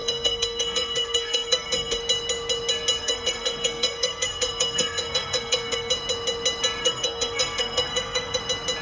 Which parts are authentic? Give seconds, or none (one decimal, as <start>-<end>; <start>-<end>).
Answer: 2.0-3.0; 5.9-6.8; 8.4-8.8

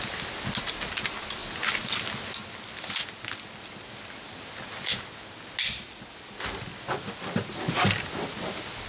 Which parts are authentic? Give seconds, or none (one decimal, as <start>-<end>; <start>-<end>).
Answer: 0.0-8.9

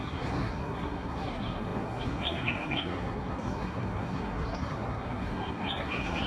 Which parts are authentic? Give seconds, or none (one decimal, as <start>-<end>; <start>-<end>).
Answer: none